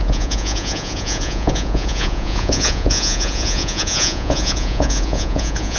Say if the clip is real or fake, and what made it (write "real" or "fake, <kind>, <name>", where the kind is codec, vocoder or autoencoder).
fake, vocoder, Vocos